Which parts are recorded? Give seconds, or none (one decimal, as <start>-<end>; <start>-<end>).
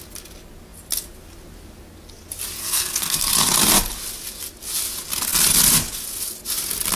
0.0-2.6; 3.3-7.0